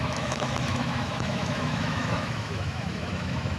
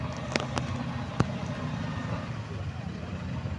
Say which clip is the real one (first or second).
second